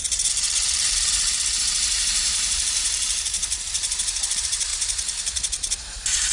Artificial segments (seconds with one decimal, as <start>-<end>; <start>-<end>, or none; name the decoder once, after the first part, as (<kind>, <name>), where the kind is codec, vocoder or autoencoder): 0.0-6.3 (vocoder, BigVGAN v2)